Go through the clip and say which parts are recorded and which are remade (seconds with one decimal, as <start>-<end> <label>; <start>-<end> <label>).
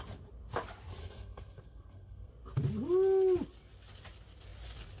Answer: 0.0-1.0 recorded; 1.0-2.3 remade; 2.3-5.0 recorded